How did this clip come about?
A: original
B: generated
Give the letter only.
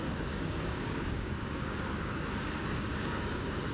B